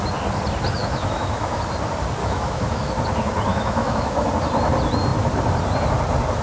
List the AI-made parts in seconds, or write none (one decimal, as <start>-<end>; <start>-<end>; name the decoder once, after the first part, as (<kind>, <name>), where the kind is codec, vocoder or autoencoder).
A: 0.8-1.6 (autoencoder, DAC-VAE); 2.2-2.9; 3.5-4.3